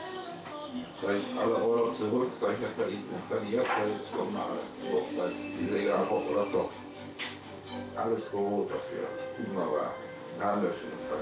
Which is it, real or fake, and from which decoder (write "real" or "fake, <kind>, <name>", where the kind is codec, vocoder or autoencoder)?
fake, codec, DAC